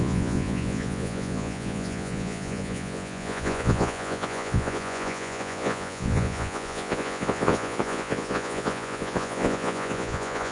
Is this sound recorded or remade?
remade